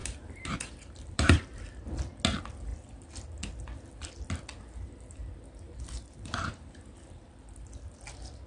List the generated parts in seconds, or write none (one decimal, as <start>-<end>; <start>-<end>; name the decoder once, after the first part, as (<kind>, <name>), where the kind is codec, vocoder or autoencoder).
0.0-1.6 (vocoder, BigVGAN v2); 4.5-7.3